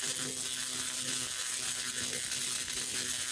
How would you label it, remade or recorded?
recorded